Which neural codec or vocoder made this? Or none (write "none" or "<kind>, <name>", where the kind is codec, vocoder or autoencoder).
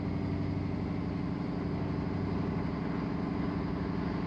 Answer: none